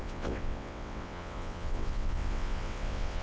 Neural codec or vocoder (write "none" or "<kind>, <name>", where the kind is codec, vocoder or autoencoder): vocoder, WaveNeXt